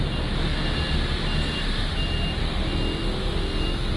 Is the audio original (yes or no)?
yes